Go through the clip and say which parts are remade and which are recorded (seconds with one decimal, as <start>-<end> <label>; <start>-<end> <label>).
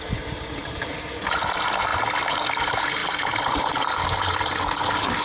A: 0.0-1.9 remade; 1.9-2.6 recorded; 2.6-5.2 remade